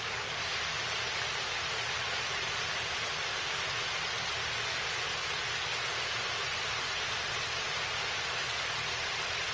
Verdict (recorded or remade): recorded